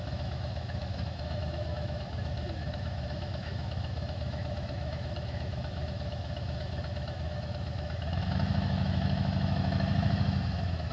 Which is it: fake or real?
fake